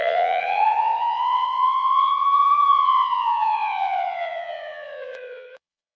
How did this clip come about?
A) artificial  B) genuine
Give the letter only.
A